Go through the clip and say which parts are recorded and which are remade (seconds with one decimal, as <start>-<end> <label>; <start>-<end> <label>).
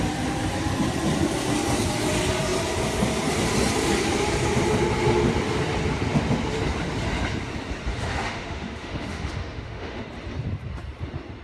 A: 0.0-7.9 recorded; 7.9-10.0 remade; 10.0-11.4 recorded